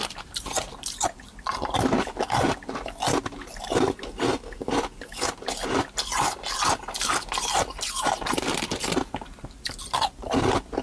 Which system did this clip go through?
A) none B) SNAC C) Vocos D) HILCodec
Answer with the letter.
A